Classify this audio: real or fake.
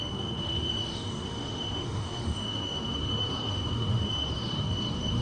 fake